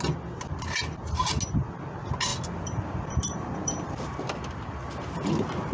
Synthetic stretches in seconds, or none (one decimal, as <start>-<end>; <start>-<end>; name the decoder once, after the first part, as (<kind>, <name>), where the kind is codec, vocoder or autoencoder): 2.3-5.3 (vocoder, BigVGAN v2)